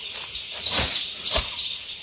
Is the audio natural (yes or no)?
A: no